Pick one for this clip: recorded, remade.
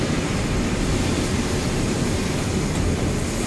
recorded